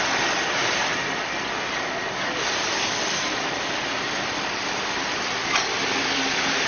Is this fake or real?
real